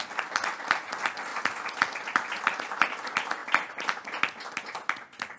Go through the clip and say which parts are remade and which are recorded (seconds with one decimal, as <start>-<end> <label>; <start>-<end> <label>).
0.0-5.4 recorded